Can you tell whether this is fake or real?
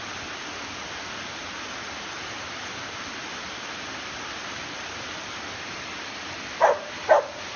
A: real